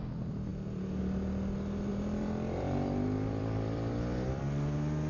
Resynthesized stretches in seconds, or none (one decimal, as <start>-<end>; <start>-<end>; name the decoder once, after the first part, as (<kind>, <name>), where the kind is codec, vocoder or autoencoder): 1.9-4.4 (vocoder, BigVGAN v2)